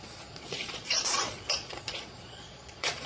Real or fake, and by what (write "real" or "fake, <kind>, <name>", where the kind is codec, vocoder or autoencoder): fake, vocoder, Vocos